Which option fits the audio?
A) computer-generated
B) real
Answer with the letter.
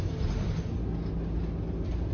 B